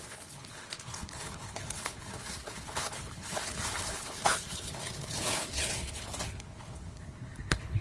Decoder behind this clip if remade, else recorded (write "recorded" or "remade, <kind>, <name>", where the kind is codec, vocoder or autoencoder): remade, codec, HILCodec